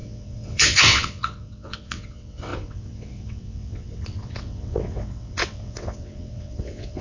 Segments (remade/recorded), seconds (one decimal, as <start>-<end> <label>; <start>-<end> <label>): 0.0-7.0 remade